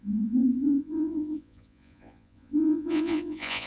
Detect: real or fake fake